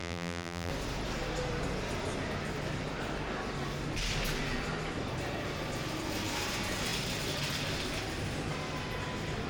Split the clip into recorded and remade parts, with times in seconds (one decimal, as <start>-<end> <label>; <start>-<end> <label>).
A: 0.0-0.7 remade; 0.7-9.5 recorded